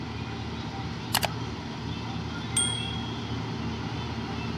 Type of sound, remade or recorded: recorded